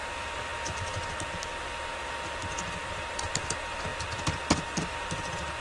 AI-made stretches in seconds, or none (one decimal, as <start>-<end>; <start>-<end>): none